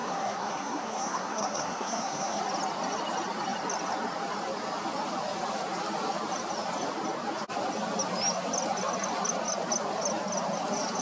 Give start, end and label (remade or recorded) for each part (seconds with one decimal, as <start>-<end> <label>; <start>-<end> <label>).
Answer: 0.0-2.4 remade; 2.4-11.0 recorded